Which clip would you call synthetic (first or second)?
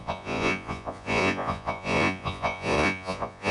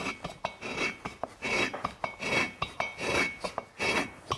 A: first